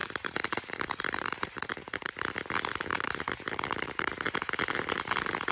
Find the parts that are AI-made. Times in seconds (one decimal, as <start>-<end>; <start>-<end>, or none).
0.0-2.1; 2.9-4.5